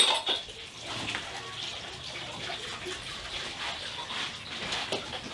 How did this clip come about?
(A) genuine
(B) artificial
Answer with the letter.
A